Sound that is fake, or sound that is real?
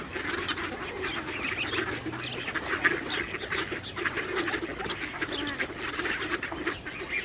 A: real